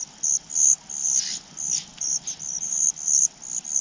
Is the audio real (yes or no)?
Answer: yes